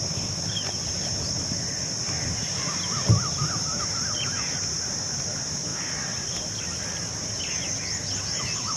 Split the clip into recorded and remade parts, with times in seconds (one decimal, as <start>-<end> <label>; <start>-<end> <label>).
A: 0.0-8.8 recorded